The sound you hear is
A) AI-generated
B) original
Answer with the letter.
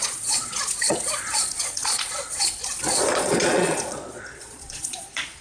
A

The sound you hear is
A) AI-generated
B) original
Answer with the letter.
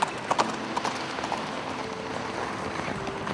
B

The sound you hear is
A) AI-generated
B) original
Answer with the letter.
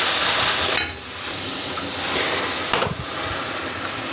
B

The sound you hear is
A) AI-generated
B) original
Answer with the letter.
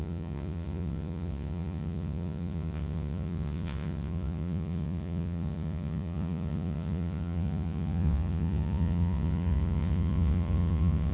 A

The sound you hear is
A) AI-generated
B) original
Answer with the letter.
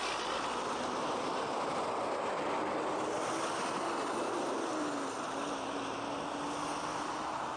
B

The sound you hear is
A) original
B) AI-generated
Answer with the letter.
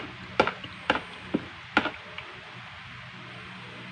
A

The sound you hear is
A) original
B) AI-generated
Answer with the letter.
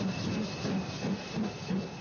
A